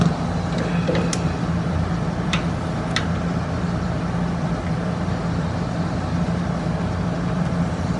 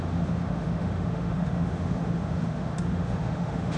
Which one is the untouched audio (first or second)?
first